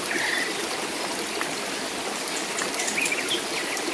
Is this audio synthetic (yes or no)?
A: no